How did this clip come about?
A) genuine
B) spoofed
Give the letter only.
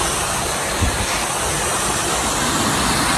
A